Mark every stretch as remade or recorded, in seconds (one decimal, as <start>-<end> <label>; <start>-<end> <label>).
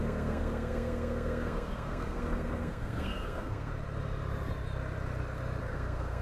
0.0-3.7 remade; 3.7-5.6 recorded; 5.6-6.2 remade